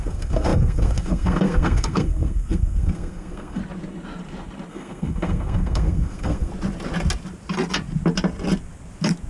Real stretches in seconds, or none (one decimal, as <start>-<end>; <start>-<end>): 3.6-4.7; 6.5-9.3